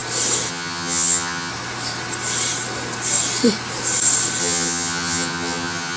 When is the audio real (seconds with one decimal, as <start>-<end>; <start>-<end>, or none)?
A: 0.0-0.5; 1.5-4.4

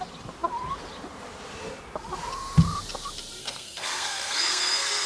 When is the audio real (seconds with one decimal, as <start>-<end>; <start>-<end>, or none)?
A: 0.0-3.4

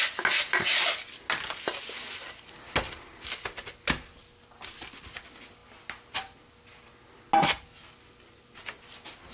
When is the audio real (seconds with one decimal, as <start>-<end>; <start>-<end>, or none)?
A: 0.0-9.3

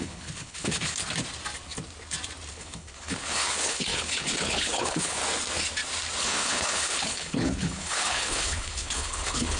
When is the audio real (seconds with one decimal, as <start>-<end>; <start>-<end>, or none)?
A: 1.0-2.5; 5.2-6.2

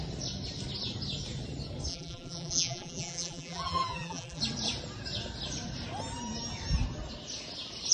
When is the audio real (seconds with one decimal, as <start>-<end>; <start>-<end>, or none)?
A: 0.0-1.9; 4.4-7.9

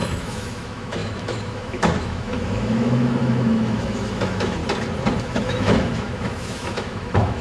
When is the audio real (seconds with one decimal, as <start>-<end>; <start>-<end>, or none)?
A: 4.6-5.2

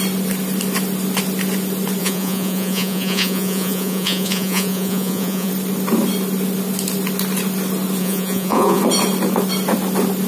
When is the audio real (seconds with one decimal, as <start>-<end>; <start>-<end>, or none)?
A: 0.0-2.0; 5.5-8.0; 8.8-10.3

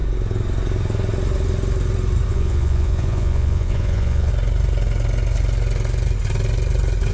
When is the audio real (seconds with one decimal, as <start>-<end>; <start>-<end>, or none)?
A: 0.0-2.3; 4.3-7.1